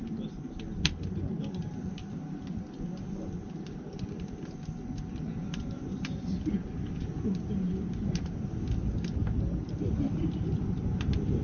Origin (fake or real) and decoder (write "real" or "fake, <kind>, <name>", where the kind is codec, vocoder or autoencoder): real